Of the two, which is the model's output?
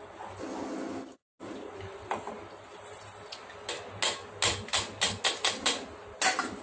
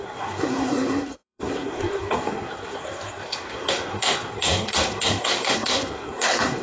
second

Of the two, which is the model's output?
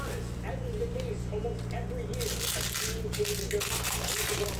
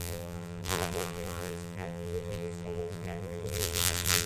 second